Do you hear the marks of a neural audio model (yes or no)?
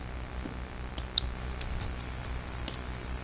no